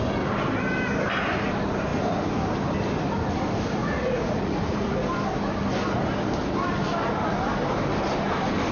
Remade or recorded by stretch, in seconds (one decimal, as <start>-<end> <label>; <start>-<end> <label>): 0.0-3.8 recorded; 3.8-4.9 remade; 4.9-8.7 recorded